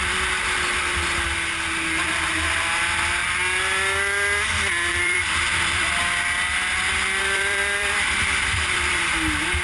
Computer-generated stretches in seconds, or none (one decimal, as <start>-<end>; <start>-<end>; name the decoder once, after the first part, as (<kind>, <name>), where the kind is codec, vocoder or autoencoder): 4.9-6.0 (vocoder, BigVGAN v2); 7.2-9.1